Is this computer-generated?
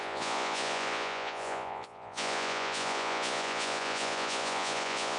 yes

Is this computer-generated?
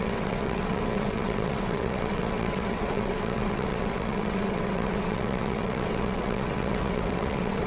yes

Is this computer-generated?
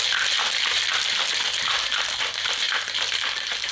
no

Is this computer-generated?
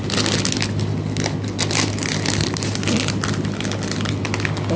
no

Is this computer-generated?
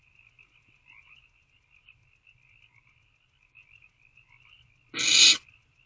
no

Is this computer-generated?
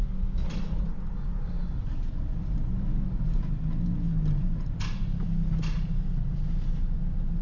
no